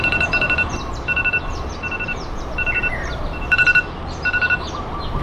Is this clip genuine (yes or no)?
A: no